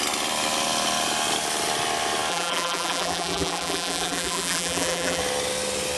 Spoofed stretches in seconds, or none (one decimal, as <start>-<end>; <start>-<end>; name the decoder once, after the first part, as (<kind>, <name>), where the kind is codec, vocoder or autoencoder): 2.3-5.2 (vocoder, BigVGAN v2)